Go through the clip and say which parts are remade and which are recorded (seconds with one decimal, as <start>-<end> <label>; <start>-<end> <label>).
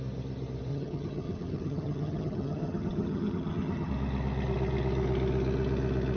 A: 0.0-0.7 recorded; 0.7-3.9 remade; 3.9-6.2 recorded